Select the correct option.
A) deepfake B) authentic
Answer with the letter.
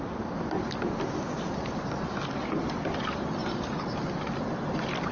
B